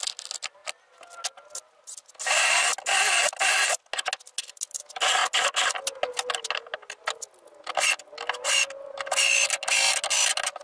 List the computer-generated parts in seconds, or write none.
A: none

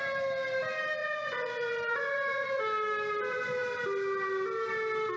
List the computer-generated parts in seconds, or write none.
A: 1.0-2.6 (vocoder, Vocos)

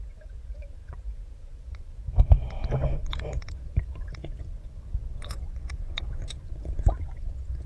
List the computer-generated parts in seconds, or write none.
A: 0.0-7.7 (vocoder, Vocos)

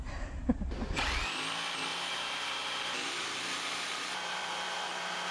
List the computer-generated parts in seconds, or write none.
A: 1.9-5.3 (vocoder, BigVGAN v2)

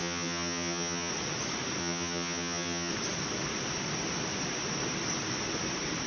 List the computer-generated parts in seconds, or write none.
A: 0.0-1.1 (vocoder, HiFi-GAN); 1.8-2.9

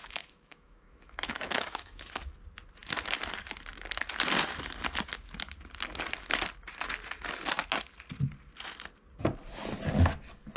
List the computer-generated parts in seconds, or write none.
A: 0.0-2.1 (autoencoder, DAC-VAE)

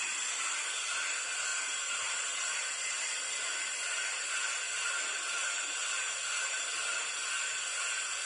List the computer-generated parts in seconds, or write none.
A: 1.5-4.3 (vocoder, BigVGAN v2)

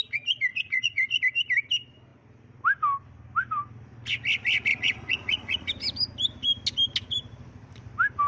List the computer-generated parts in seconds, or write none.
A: 0.5-1.2 (vocoder, Vocos); 4.7-5.7